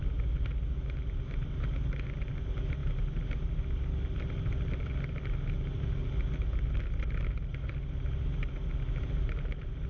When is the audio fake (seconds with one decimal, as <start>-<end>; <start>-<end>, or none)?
none